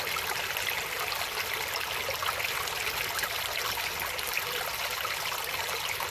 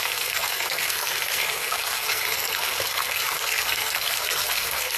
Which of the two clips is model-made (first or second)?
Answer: second